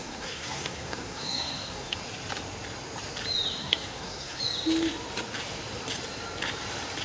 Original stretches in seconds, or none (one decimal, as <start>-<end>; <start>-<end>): 2.0-3.6; 4.4-7.0